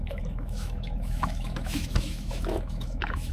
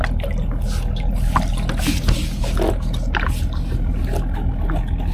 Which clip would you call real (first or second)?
second